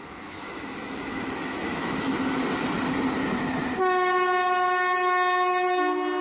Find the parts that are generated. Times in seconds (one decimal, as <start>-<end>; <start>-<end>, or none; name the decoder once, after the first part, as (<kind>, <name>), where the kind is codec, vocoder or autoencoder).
0.0-2.4 (autoencoder, DAC-VAE)